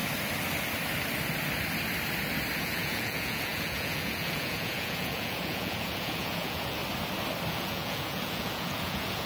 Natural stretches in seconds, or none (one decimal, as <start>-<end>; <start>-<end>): 0.0-2.6; 6.8-7.5